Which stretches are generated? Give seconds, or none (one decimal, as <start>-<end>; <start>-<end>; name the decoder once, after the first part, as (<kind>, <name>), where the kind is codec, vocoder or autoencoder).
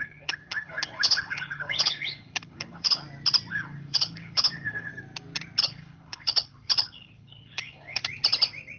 0.0-3.0 (codec, HILCodec); 3.5-4.9; 5.6-8.0